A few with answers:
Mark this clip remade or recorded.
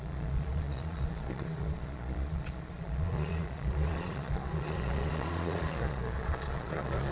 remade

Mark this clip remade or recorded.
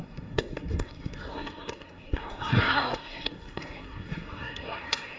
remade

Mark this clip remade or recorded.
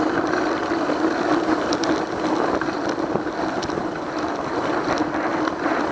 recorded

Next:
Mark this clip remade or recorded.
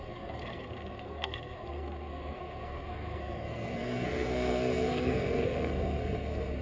remade